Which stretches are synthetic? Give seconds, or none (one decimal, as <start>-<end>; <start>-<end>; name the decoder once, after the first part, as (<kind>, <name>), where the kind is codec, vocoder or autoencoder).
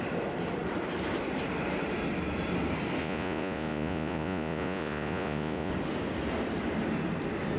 3.0-5.7 (vocoder, Vocos)